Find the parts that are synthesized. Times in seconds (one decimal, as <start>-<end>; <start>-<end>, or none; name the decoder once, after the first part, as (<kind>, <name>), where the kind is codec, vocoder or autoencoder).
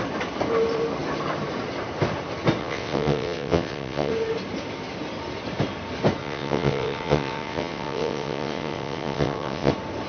2.6-4.1 (vocoder, WaveNeXt); 6.2-9.7